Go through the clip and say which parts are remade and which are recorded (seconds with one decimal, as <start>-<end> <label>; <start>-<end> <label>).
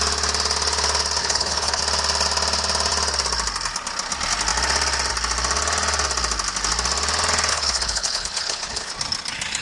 0.0-1.2 recorded; 1.2-1.8 remade; 1.8-7.5 recorded; 7.5-8.9 remade; 8.9-9.6 recorded